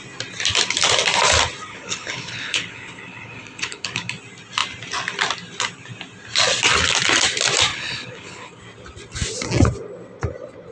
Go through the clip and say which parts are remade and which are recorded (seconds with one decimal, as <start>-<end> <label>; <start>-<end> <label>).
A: 0.0-1.7 recorded; 1.7-4.1 remade; 4.1-7.7 recorded; 7.7-8.6 remade; 8.6-10.7 recorded